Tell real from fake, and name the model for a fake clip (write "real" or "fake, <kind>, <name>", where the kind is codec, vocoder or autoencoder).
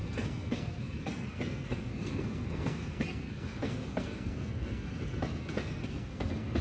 fake, codec, SNAC